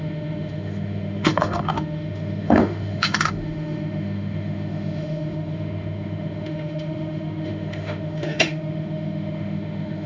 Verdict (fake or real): fake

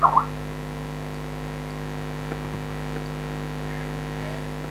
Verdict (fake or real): real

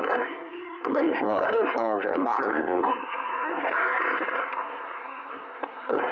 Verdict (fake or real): fake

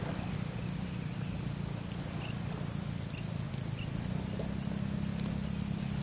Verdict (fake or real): real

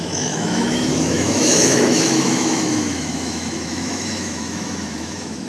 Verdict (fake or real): fake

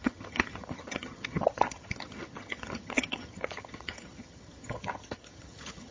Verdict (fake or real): fake